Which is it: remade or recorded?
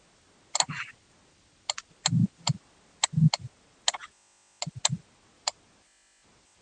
recorded